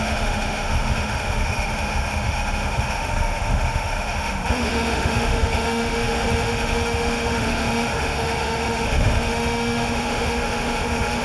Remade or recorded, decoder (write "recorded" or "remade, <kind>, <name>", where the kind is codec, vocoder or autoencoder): remade, autoencoder, DAC-VAE